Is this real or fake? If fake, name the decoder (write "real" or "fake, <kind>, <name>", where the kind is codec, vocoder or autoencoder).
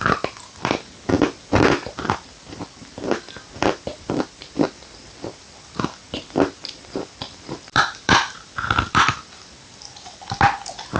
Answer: fake, vocoder, BigVGAN v2